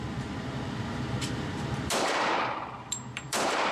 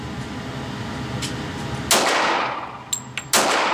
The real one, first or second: second